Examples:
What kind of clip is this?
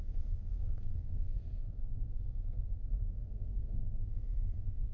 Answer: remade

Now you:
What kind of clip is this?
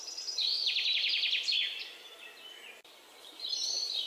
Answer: remade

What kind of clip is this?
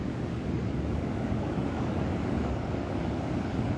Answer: remade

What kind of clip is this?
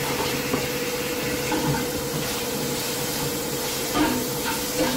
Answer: recorded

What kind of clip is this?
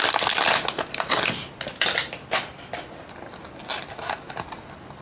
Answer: recorded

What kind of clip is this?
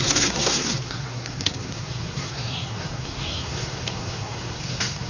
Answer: remade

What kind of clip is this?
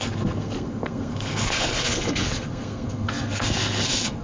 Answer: remade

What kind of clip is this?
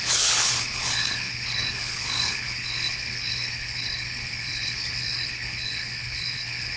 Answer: remade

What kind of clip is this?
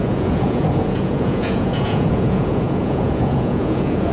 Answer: remade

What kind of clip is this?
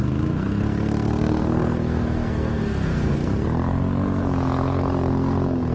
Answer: remade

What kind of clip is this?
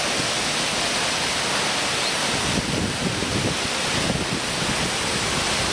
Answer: recorded